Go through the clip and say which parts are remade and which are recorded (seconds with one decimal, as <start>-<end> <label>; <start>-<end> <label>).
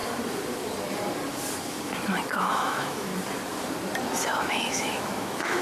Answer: 0.0-2.4 recorded; 2.4-3.1 remade; 3.1-4.4 recorded; 4.4-5.6 remade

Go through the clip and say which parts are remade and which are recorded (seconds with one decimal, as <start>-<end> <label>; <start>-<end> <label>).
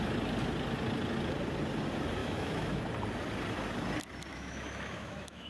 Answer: 0.0-2.2 recorded; 2.2-2.8 remade; 2.8-4.3 recorded; 4.3-5.5 remade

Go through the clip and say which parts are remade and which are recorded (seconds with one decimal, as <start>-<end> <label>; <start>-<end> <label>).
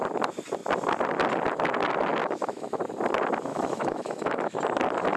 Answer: 0.0-2.2 recorded; 2.2-2.8 remade; 2.8-3.5 recorded; 3.5-4.6 remade; 4.6-5.2 recorded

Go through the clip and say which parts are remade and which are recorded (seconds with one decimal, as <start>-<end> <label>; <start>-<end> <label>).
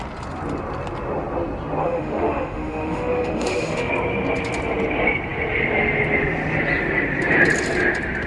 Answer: 0.0-1.8 recorded; 1.8-3.9 remade; 3.9-8.3 recorded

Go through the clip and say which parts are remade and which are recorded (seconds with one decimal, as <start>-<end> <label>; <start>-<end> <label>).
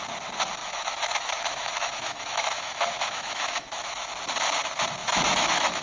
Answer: 0.0-0.6 recorded; 0.6-4.1 remade; 4.1-5.0 recorded; 5.0-5.8 remade